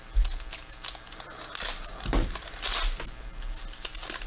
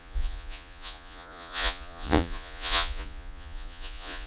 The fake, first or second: second